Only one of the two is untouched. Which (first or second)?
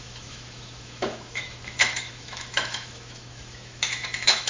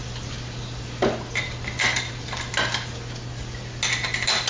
second